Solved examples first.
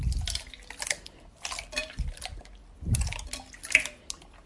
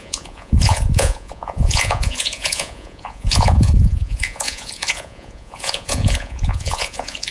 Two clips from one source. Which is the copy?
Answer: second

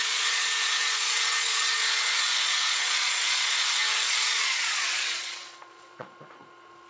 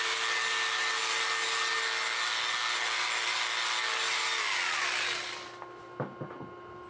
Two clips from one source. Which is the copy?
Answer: first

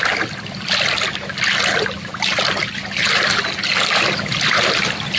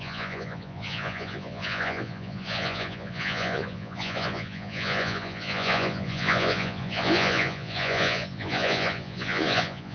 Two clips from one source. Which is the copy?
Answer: second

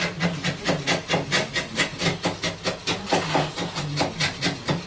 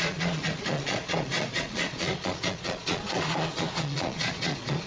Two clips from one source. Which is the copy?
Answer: second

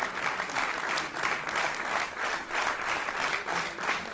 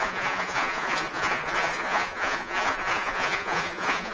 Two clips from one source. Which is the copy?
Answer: second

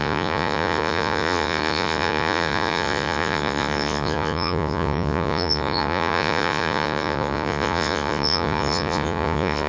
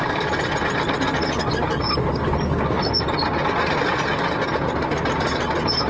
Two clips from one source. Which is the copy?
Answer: first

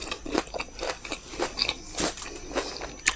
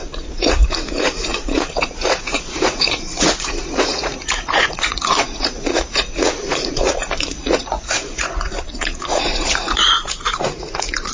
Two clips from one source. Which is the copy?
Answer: second